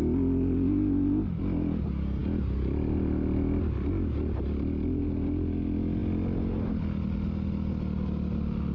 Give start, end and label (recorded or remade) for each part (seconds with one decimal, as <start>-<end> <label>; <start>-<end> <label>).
0.0-8.7 recorded